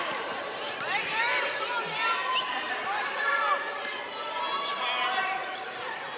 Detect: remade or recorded remade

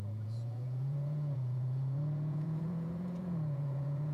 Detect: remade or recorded remade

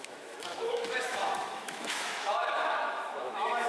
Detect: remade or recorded remade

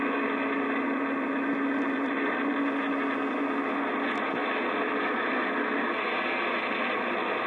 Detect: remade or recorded recorded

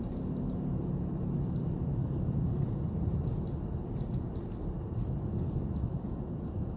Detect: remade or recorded recorded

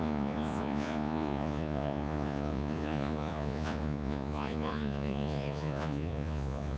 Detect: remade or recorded remade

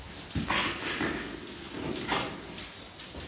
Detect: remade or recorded recorded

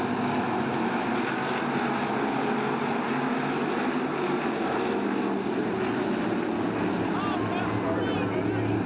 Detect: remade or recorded recorded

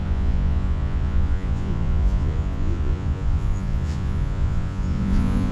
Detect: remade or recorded remade